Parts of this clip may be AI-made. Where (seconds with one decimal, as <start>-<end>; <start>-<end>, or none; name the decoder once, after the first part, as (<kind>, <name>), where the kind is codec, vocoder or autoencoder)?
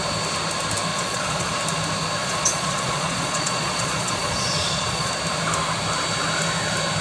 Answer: 0.9-1.5 (vocoder, Vocos); 2.2-5.1